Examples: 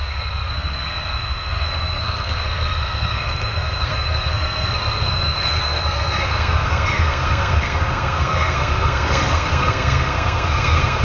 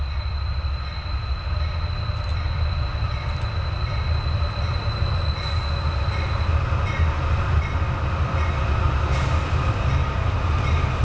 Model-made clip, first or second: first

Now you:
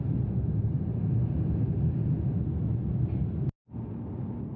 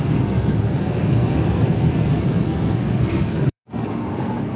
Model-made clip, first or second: second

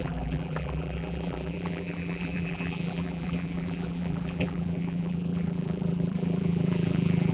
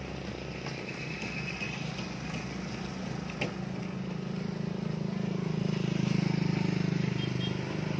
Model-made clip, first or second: first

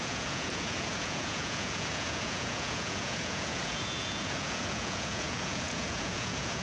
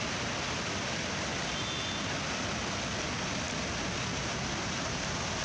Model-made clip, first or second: first